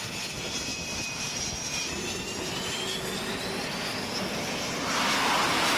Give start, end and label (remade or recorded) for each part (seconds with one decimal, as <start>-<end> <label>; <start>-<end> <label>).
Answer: 0.0-5.8 recorded